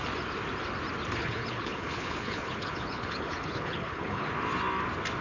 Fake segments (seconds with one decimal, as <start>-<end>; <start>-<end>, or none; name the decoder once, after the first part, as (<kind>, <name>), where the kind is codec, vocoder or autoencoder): 1.2-4.3 (codec, HILCodec)